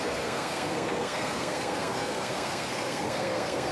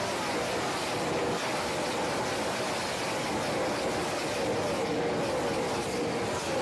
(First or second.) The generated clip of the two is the first